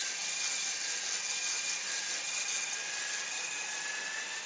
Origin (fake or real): real